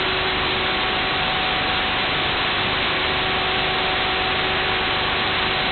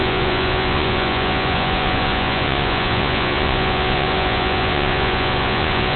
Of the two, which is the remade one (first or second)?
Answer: second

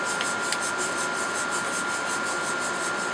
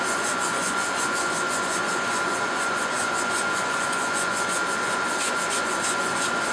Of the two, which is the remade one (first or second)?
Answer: second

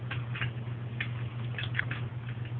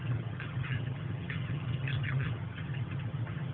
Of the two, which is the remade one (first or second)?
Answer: second